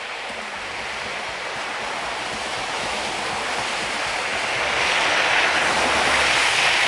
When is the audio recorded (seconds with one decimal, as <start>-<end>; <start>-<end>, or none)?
0.0-2.4; 3.1-6.9